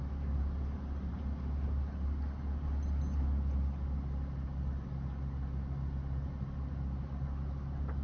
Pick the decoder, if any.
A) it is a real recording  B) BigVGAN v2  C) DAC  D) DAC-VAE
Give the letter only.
A